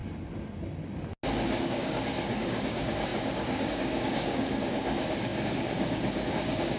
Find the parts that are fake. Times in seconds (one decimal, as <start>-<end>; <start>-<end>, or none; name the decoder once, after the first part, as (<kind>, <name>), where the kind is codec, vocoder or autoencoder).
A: 1.6-6.8 (codec, DAC)